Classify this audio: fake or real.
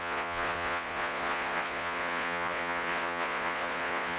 fake